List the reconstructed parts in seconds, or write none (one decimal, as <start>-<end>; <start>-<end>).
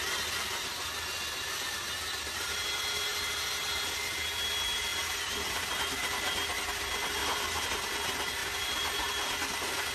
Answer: 7.2-7.7; 8.4-9.1